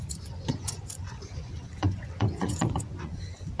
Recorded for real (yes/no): no